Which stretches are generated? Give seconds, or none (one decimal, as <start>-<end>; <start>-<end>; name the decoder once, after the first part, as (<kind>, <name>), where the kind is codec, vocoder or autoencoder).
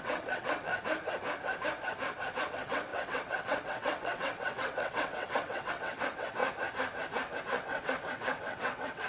0.0-0.7 (vocoder, WaveNeXt); 2.5-6.4; 7.4-9.1